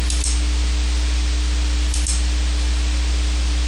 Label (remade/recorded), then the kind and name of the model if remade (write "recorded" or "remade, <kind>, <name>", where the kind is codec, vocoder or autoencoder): recorded